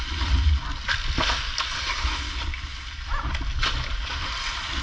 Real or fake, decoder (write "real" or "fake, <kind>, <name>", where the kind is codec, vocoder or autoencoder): real